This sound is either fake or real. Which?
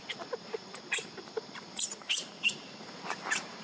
fake